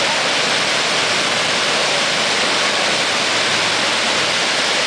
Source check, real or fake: real